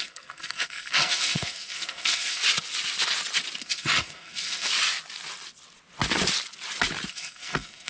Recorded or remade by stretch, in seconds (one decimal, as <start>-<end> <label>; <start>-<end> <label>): 0.0-2.4 remade; 2.4-3.6 recorded; 3.6-4.7 remade; 4.7-7.1 recorded; 7.1-7.9 remade